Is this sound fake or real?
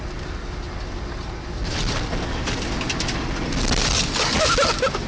real